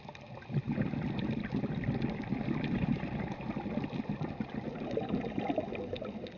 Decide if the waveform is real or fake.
real